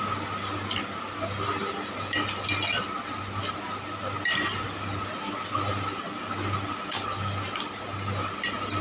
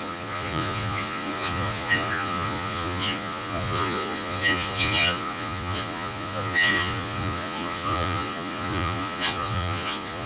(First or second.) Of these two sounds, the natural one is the first